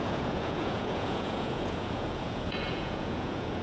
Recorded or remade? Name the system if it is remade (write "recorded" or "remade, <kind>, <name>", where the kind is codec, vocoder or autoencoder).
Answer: remade, vocoder, Vocos